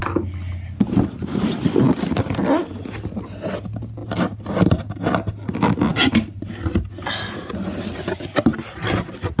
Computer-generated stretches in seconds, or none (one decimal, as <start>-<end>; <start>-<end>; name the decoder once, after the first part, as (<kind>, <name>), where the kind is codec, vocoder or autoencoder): none